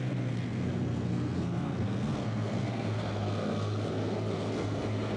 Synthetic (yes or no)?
yes